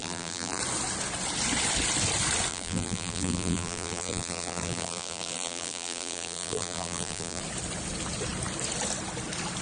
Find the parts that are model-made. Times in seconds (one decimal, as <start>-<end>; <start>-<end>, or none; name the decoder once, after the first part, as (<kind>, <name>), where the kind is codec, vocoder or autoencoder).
0.0-0.6 (vocoder, BigVGAN v2); 2.5-7.4